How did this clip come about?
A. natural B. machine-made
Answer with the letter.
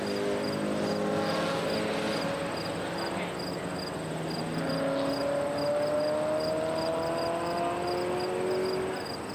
A